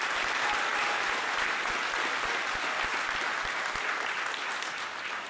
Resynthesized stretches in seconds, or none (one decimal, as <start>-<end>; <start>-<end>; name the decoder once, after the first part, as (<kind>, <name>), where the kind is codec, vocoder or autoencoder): none